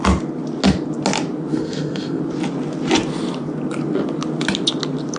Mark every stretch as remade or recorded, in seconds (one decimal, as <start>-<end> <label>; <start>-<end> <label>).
0.0-1.5 recorded; 1.5-2.2 remade; 2.2-5.2 recorded